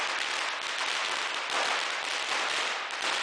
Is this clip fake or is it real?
real